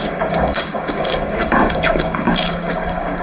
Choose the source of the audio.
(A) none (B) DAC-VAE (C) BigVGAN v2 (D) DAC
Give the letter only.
D